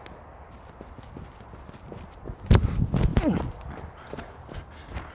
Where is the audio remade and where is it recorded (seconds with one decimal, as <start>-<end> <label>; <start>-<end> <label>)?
0.0-5.1 recorded